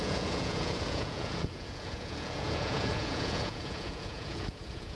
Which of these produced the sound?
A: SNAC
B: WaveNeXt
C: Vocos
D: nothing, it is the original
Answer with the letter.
C